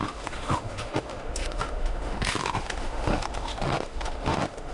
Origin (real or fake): fake